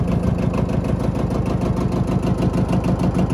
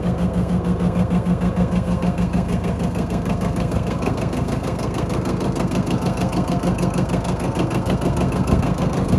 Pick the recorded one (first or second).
first